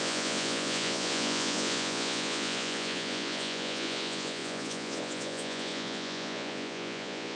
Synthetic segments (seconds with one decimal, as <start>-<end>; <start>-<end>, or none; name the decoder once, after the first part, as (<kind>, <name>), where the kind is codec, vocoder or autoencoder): 0.0-7.3 (vocoder, Vocos)